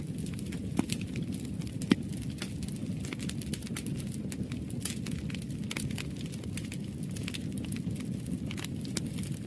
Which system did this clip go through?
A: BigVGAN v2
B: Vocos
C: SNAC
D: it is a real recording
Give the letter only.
D